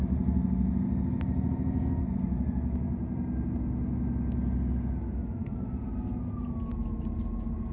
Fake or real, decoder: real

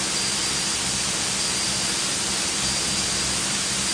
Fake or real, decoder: fake, vocoder, BigVGAN v2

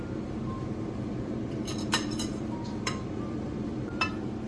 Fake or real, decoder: fake, vocoder, BigVGAN v2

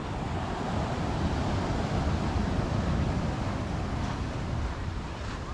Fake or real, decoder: fake, vocoder, BigVGAN v2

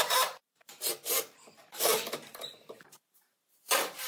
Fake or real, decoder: fake, vocoder, BigVGAN v2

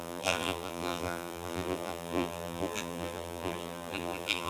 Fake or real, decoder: fake, vocoder, BigVGAN v2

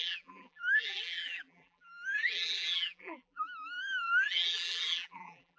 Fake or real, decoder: fake, vocoder, BigVGAN v2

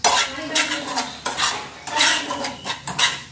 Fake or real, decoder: real